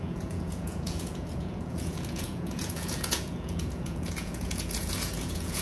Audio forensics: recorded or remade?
remade